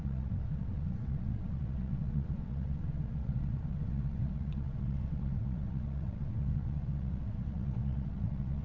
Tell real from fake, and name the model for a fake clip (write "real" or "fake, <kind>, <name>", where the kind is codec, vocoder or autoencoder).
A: fake, vocoder, WaveNeXt